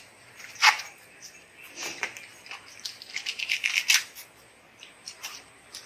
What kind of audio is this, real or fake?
fake